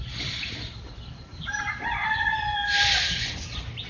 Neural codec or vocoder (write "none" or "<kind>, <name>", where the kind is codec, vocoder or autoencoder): none